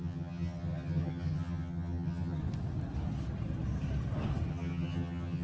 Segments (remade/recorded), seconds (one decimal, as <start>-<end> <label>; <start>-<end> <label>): 0.0-2.4 remade; 2.4-4.5 recorded; 4.5-5.4 remade